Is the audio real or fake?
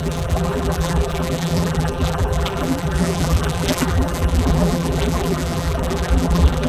fake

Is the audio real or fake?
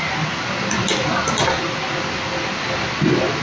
real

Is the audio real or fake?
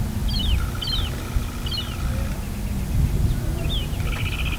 real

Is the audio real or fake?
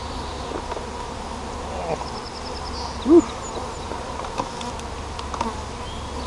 real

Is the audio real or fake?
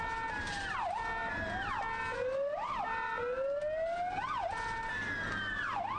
real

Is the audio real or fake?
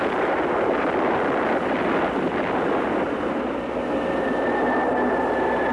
fake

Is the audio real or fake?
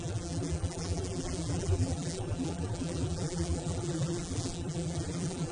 fake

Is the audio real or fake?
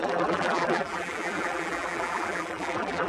fake